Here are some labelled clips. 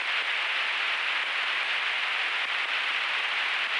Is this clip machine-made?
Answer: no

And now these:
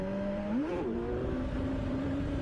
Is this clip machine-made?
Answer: yes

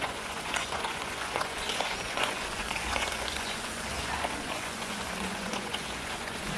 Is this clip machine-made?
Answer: yes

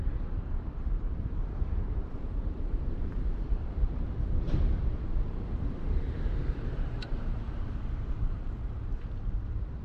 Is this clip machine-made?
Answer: yes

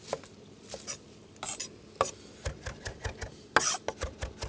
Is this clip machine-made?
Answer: no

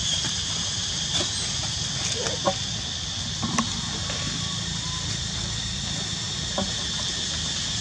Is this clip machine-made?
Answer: no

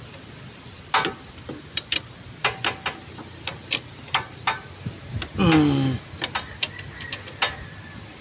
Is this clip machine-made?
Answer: no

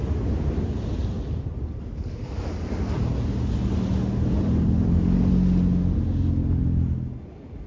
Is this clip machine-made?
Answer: no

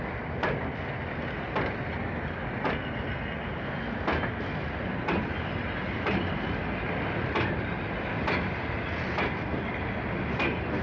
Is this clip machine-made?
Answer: no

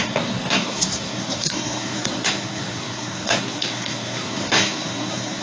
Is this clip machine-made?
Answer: yes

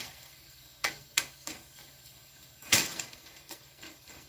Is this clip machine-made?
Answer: yes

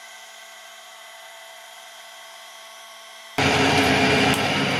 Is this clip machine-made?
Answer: yes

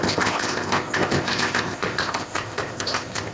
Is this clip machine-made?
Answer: yes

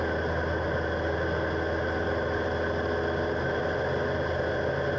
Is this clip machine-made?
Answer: no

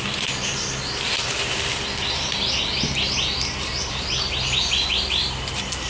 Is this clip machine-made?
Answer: no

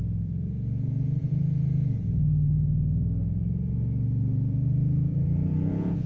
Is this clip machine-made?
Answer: yes